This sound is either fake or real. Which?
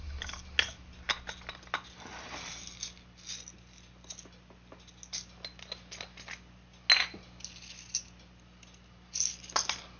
real